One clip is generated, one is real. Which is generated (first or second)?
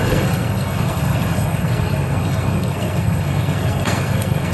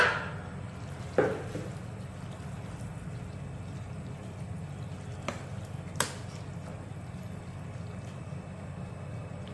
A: first